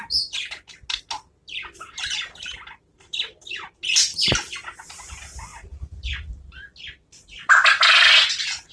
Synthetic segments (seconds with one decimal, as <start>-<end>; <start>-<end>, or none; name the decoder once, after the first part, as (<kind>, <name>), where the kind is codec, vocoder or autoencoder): none